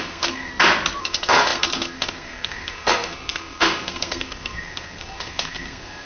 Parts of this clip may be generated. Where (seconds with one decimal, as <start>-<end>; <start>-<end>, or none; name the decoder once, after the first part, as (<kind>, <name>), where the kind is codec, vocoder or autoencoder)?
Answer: 0.0-0.5 (codec, SNAC); 1.0-6.1